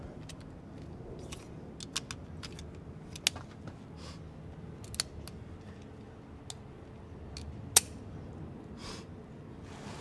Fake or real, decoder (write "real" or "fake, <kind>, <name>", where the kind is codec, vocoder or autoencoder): real